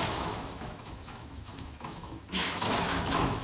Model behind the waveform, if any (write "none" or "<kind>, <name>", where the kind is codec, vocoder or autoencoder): autoencoder, DAC-VAE